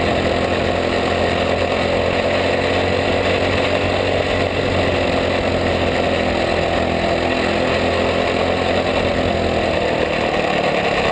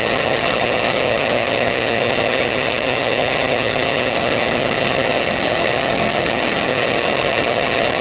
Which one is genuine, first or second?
first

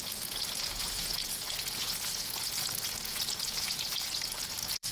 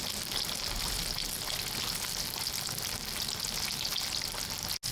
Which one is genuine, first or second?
second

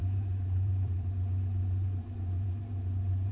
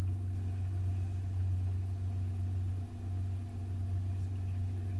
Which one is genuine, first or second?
second